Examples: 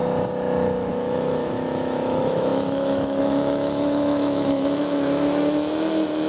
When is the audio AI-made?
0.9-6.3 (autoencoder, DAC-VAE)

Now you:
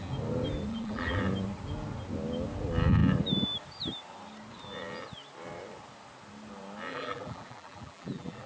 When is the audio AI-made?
0.7-1.2 (vocoder, BigVGAN v2); 6.9-8.5

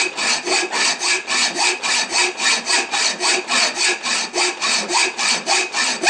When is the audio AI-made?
none

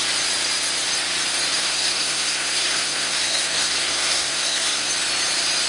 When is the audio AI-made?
1.5-4.9 (codec, SNAC)

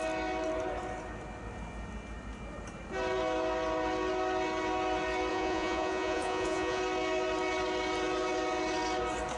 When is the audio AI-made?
5.3-6.8 (vocoder, Vocos)

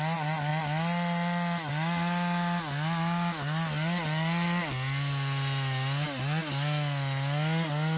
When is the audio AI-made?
none

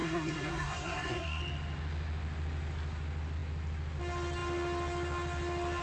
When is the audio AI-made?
0.0-1.4 (codec, SNAC)